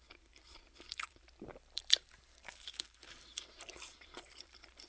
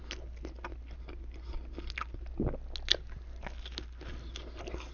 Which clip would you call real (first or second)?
second